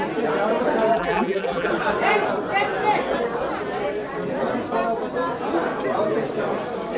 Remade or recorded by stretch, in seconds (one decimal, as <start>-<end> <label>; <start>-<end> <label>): 0.0-0.9 recorded; 0.9-1.7 remade; 1.7-7.0 recorded